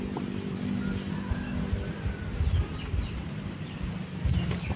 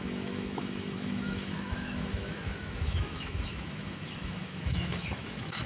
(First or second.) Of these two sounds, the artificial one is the second